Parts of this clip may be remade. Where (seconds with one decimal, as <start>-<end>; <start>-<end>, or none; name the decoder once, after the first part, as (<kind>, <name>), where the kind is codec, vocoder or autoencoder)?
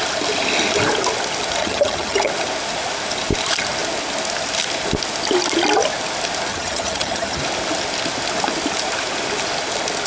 1.6-2.3 (vocoder, HiFi-GAN); 6.5-7.4